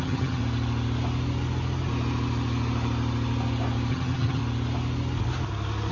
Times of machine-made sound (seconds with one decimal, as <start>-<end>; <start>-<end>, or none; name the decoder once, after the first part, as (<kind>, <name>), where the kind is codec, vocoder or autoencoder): 0.0-0.4 (vocoder, HiFi-GAN); 3.9-4.4